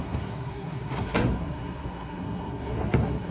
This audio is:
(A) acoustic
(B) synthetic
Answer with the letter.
B